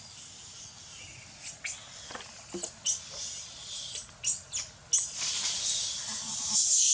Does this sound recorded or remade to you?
recorded